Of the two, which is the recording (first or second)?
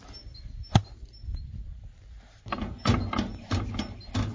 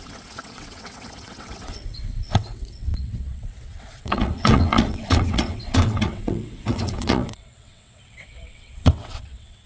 first